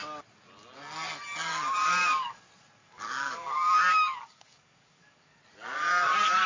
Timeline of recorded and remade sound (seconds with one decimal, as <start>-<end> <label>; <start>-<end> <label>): 0.0-1.8 recorded; 1.8-2.4 remade; 2.4-2.8 recorded; 2.8-5.4 remade; 5.4-6.5 recorded